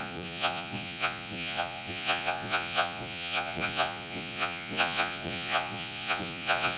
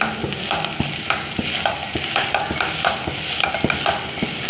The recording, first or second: second